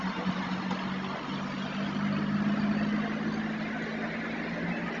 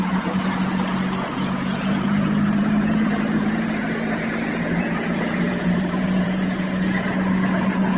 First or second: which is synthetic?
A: second